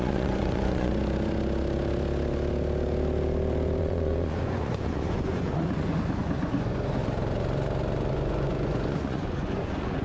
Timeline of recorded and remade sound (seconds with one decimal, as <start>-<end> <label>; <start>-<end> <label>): 0.0-0.9 remade; 0.9-3.8 recorded; 3.8-7.0 remade; 7.0-8.1 recorded; 8.1-10.0 remade